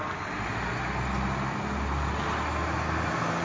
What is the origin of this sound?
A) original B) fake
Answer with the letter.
A